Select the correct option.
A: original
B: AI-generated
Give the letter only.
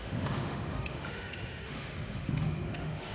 B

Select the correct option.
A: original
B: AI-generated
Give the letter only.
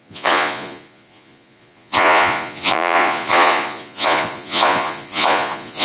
B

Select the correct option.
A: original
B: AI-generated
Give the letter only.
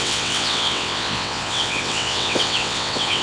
B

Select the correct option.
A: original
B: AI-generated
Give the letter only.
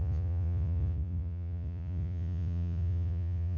B